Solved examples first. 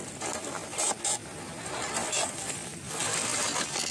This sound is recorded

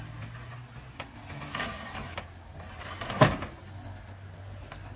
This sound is recorded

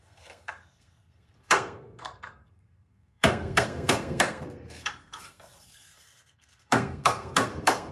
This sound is remade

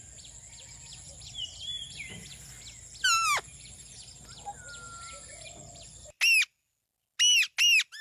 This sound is recorded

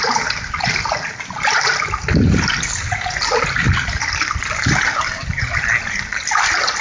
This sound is recorded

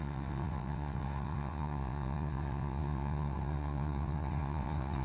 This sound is remade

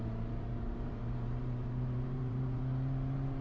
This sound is remade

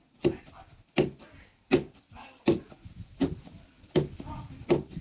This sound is recorded